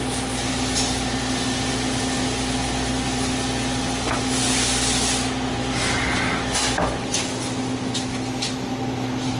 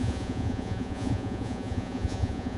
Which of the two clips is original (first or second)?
first